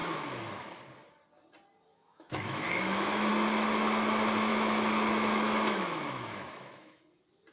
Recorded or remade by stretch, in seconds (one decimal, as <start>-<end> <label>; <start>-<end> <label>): 0.0-0.8 remade; 0.8-1.9 recorded; 1.9-3.3 remade; 3.3-4.5 recorded; 4.5-7.0 remade; 7.0-7.5 recorded